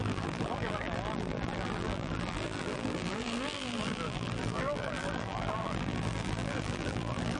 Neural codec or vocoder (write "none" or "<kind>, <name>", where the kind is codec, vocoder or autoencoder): vocoder, BigVGAN v2